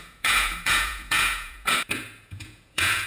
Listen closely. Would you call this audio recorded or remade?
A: remade